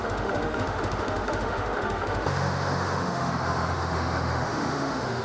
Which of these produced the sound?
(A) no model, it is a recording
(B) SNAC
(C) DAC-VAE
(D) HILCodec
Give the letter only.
C